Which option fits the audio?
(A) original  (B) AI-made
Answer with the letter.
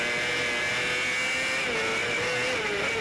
A